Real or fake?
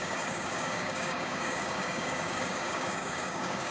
fake